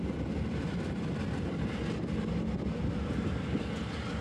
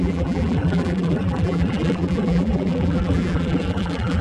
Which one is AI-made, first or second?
second